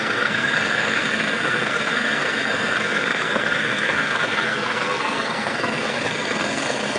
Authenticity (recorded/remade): remade